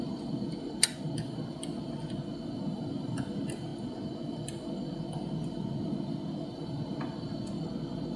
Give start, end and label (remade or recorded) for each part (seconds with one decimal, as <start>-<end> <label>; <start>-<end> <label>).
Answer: 0.0-8.2 recorded

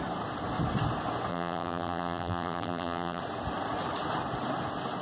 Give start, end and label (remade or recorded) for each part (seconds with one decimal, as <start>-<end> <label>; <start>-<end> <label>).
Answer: 0.0-1.3 recorded; 1.3-3.2 remade; 3.2-5.0 recorded

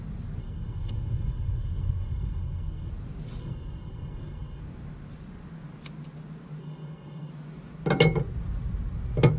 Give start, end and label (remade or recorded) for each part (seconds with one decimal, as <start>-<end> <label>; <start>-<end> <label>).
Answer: 0.0-0.4 recorded; 0.4-2.9 remade; 2.9-3.4 recorded; 3.4-4.6 remade; 4.6-6.6 recorded; 6.6-7.3 remade; 7.3-9.4 recorded

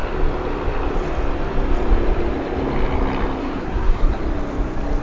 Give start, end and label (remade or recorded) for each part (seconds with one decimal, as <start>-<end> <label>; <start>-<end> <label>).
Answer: 0.0-3.4 recorded; 3.4-4.2 remade; 4.2-5.0 recorded